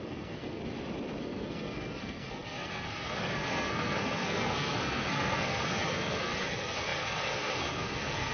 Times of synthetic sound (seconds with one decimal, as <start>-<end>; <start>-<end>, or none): 0.0-0.6; 1.2-8.3